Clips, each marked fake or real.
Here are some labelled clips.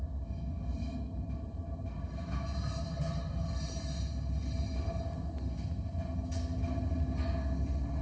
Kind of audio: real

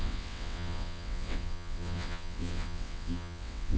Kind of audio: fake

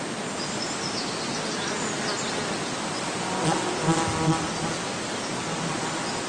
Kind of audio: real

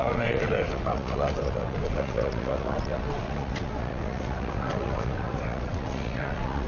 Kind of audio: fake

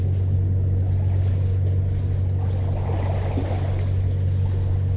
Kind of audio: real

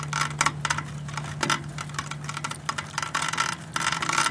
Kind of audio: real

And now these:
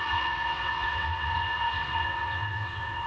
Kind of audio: fake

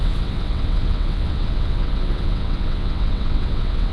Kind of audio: fake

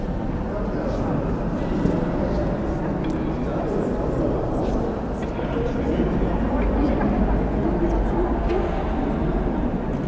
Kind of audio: real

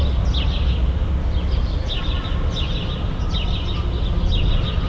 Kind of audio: real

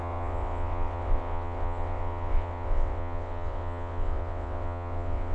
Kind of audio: fake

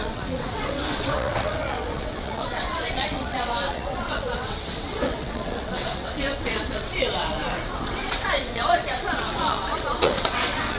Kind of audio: fake